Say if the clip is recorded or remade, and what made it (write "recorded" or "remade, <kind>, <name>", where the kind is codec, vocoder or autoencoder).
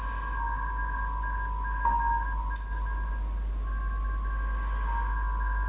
recorded